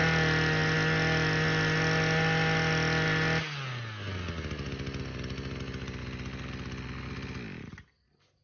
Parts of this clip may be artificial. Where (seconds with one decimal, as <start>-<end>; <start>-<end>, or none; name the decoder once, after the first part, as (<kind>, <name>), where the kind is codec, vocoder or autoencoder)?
none